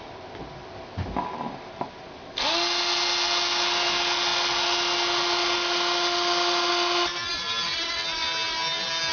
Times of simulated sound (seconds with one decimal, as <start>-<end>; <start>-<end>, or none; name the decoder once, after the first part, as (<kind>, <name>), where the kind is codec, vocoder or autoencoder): none